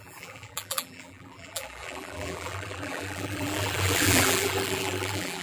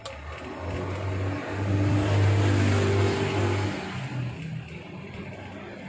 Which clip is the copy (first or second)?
first